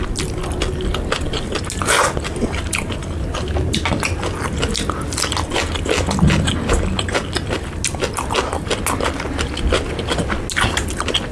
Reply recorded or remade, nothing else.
recorded